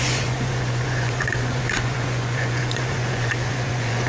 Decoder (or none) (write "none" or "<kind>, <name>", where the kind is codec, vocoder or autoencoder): vocoder, Vocos